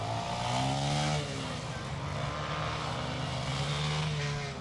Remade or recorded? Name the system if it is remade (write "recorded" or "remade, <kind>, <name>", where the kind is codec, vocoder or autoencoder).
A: recorded